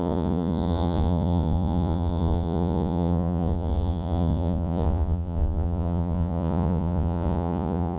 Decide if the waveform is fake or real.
fake